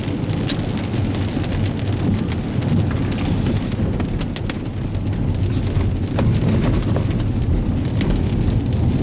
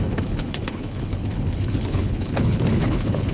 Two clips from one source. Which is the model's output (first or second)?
second